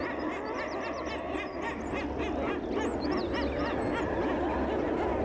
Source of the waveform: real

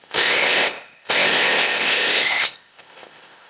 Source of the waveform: fake